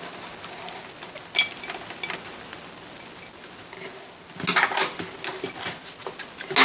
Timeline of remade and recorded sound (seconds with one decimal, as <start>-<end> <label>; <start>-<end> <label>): 0.0-6.6 recorded